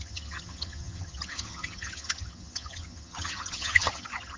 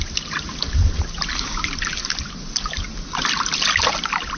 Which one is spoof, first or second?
first